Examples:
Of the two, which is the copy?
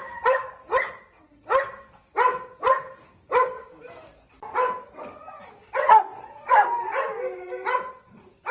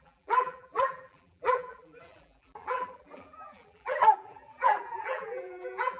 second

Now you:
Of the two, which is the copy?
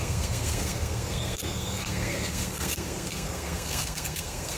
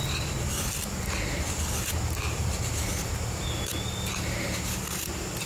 first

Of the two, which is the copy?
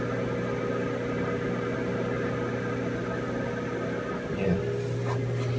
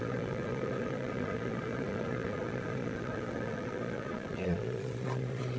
second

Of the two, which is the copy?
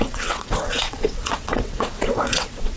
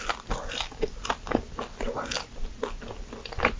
first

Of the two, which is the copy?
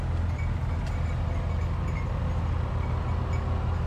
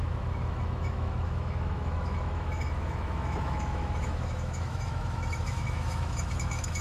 second